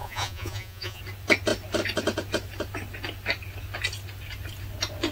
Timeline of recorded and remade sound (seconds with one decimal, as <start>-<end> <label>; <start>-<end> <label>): 0.0-1.0 remade; 1.0-5.1 recorded